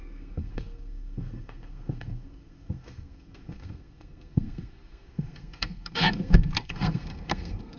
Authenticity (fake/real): fake